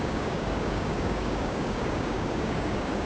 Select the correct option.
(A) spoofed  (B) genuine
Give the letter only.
A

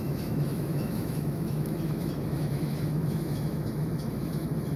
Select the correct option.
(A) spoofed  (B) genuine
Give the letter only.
A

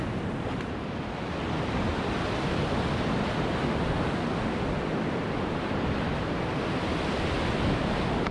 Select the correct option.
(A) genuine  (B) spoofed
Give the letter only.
A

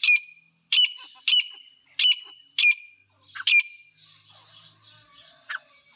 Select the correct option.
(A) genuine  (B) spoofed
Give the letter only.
A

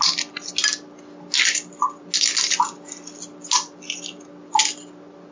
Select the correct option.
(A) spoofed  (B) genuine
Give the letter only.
B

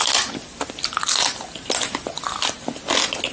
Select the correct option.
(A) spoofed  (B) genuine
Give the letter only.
B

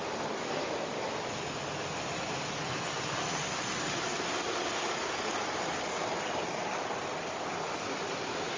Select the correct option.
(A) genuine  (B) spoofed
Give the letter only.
A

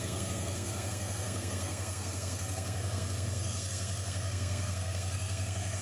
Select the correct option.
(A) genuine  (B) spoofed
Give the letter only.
B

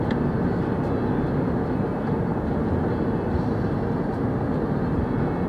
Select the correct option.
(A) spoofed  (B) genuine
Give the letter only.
B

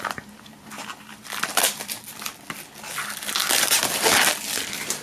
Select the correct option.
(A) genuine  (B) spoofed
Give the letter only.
A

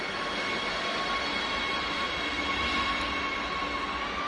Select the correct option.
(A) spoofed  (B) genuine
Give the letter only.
B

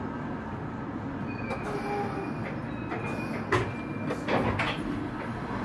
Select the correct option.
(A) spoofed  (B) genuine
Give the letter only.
B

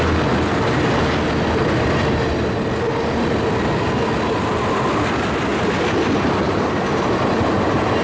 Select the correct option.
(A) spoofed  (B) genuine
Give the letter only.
B